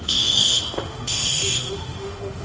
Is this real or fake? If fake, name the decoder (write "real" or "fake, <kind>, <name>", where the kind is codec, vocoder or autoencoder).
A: fake, autoencoder, DAC-VAE